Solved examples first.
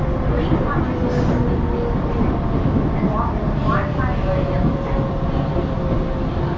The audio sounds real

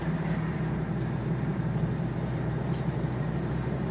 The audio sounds fake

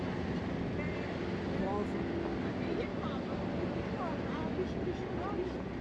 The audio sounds real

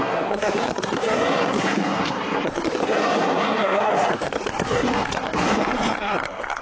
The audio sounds fake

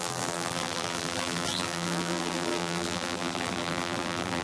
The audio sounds fake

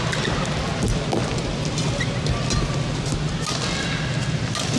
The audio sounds real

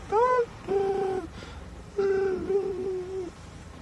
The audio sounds fake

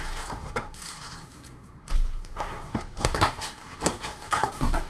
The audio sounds fake